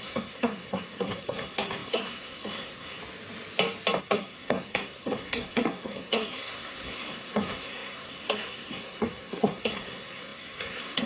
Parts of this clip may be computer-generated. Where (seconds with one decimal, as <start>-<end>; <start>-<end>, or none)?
0.0-3.0; 4.0-11.1